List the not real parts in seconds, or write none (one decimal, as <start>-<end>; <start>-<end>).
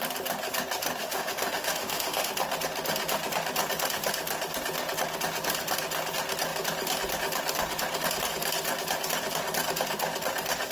1.0-2.3